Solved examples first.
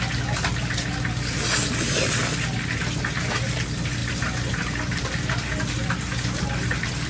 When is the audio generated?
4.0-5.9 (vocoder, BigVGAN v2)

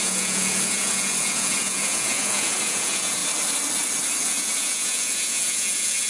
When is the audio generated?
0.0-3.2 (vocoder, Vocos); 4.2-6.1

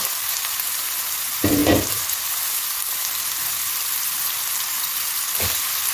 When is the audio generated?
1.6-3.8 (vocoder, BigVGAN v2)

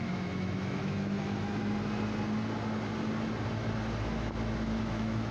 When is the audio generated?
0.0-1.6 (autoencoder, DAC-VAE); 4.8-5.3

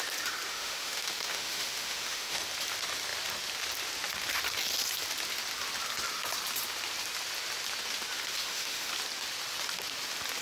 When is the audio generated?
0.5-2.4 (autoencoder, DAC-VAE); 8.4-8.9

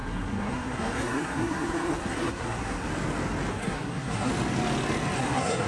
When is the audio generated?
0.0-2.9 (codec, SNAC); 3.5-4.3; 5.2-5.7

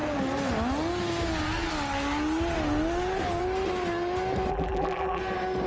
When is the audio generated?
4.5-5.2 (vocoder, BigVGAN v2)

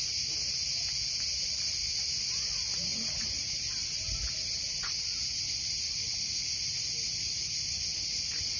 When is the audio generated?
2.9-5.4 (vocoder, BigVGAN v2)